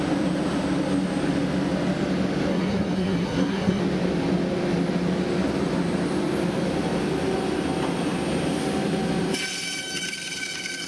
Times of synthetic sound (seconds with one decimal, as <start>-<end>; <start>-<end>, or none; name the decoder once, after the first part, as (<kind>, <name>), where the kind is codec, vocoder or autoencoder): 2.5-3.8 (codec, SNAC)